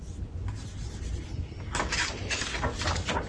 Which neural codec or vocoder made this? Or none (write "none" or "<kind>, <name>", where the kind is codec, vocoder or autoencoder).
none